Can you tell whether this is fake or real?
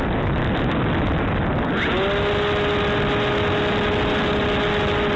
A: real